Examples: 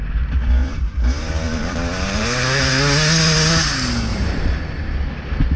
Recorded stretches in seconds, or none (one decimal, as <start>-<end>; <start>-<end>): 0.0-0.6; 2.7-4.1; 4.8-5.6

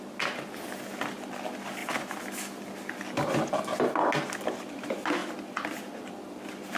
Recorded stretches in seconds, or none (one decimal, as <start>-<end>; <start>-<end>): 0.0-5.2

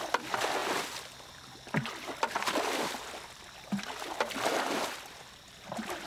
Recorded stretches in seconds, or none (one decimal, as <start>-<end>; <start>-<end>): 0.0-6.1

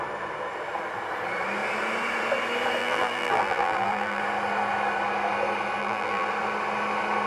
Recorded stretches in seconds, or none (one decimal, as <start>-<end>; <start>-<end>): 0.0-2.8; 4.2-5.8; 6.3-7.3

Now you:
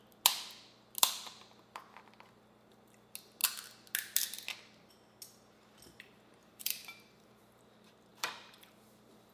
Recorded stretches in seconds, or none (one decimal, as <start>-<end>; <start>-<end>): 0.0-6.4; 7.4-8.1

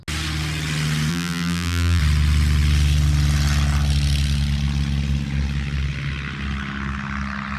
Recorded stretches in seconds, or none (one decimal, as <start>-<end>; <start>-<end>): 0.0-1.1; 2.0-7.6